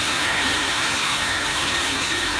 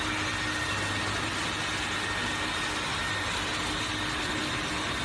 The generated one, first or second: first